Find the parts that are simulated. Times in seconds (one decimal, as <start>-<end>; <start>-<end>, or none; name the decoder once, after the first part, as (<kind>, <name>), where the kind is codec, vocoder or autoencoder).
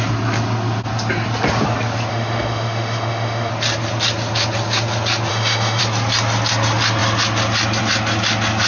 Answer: 2.1-3.5 (autoencoder, DAC-VAE); 5.3-5.8